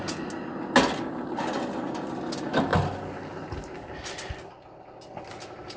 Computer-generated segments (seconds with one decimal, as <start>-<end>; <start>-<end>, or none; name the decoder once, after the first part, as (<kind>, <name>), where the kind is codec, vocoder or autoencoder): none